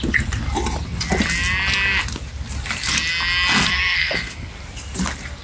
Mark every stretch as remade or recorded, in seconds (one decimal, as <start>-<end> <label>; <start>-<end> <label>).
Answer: 0.0-3.6 recorded; 3.6-4.5 remade; 4.5-5.4 recorded